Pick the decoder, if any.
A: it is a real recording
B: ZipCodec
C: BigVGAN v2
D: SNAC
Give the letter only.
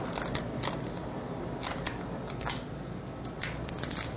A